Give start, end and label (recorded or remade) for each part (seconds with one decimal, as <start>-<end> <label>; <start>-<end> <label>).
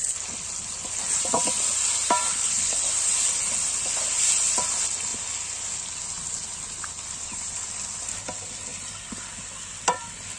0.0-2.3 recorded; 2.3-2.8 remade; 2.8-10.4 recorded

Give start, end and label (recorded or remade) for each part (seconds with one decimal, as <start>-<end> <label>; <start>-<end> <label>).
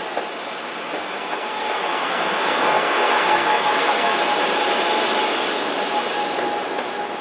0.0-1.0 recorded; 1.0-4.2 remade; 4.2-7.2 recorded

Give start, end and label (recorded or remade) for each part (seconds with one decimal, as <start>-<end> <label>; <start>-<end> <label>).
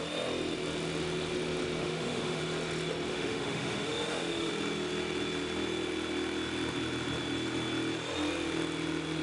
0.0-1.8 recorded; 1.8-2.4 remade; 2.4-3.1 recorded; 3.1-4.5 remade; 4.5-9.2 recorded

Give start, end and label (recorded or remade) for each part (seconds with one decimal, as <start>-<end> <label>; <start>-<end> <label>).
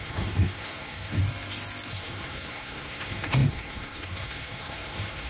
0.0-1.2 remade; 1.2-1.9 recorded; 1.9-5.3 remade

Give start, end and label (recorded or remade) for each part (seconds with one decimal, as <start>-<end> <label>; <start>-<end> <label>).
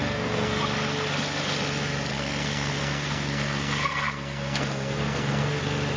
0.0-0.6 remade; 0.6-2.1 recorded; 2.1-5.6 remade; 5.6-6.0 recorded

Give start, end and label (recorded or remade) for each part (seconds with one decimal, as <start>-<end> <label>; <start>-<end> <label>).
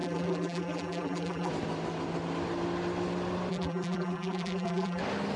0.0-1.5 remade; 1.5-3.5 recorded; 3.5-5.0 remade; 5.0-5.4 recorded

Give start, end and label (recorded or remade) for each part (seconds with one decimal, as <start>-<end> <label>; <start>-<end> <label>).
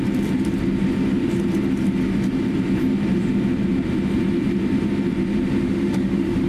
0.0-5.6 recorded; 5.6-6.5 remade